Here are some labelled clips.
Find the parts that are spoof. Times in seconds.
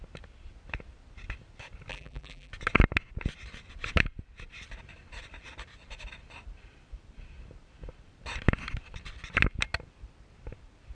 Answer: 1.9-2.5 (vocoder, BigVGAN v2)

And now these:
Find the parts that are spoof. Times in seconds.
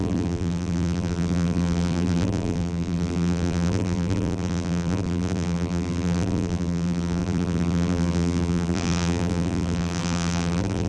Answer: 0.0-10.9 (vocoder, BigVGAN v2)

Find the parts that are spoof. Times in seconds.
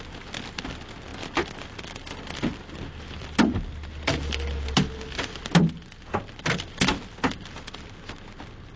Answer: none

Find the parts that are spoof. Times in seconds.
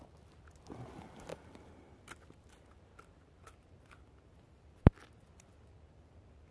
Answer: 1.3-1.9 (vocoder, BigVGAN v2)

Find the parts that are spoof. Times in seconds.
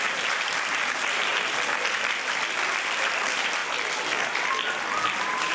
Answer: 0.0-1.3 (vocoder, BigVGAN v2); 2.3-3.6; 4.3-5.5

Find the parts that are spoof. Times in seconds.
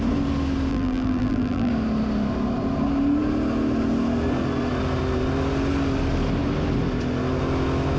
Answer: 0.7-1.7 (vocoder, BigVGAN v2)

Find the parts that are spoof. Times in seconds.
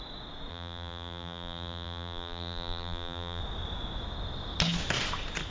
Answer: 0.5-3.4 (vocoder, BigVGAN v2)